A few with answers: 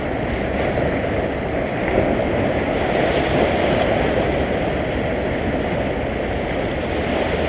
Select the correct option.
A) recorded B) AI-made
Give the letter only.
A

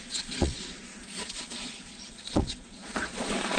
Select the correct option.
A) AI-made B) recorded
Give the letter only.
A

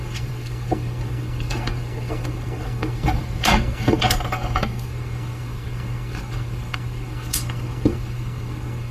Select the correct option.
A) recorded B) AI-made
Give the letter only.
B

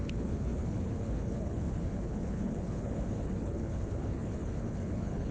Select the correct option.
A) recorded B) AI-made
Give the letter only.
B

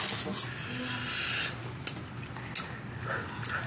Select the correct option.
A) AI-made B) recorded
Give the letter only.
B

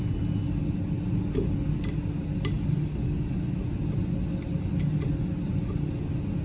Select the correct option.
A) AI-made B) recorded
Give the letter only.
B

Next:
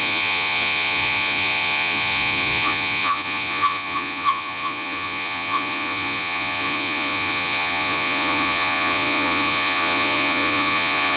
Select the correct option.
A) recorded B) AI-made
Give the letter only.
B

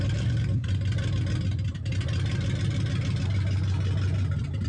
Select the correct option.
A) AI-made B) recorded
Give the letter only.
B